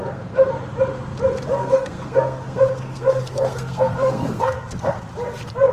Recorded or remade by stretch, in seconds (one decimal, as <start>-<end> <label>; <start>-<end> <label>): 0.0-0.5 remade; 0.5-1.6 recorded; 1.6-5.0 remade; 5.0-5.7 recorded